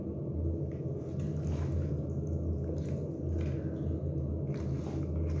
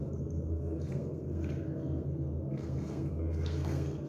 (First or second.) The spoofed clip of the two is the second